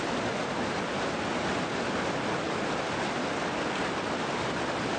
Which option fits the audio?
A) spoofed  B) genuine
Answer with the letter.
B